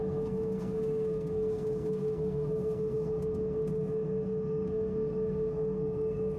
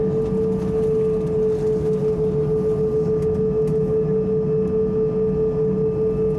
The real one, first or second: second